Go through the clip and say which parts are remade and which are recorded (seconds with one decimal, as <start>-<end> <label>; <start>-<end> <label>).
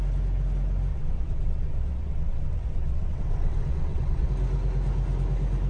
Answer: 0.0-0.9 recorded; 0.9-4.3 remade; 4.3-5.7 recorded